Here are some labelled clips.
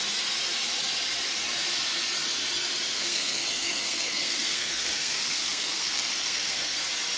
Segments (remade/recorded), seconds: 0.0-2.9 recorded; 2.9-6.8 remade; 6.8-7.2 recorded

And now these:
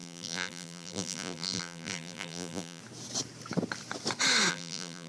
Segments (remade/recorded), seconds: 0.0-2.8 remade; 2.8-4.5 recorded; 4.5-5.1 remade

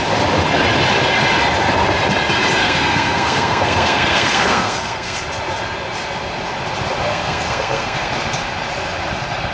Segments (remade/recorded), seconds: 0.0-2.6 recorded; 2.6-5.2 remade; 5.2-7.1 recorded; 7.1-8.1 remade; 8.1-9.5 recorded

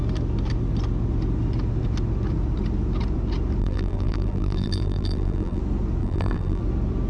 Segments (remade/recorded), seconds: 0.0-3.6 recorded; 3.6-5.6 remade; 5.6-6.0 recorded; 6.0-6.6 remade; 6.6-7.1 recorded

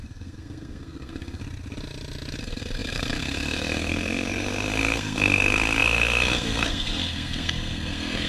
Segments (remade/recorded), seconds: 0.0-1.4 remade; 1.4-2.4 recorded; 2.4-8.3 remade